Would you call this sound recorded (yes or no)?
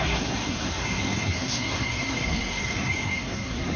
no